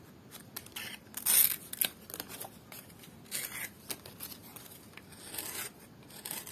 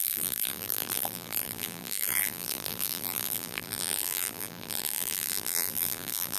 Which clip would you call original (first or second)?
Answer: first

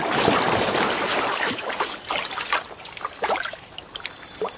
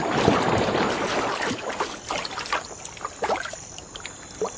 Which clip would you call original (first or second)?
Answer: second